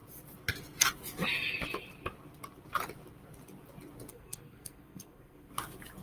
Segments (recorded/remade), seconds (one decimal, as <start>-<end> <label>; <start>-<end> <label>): 0.0-4.1 recorded; 4.1-5.5 remade; 5.5-6.0 recorded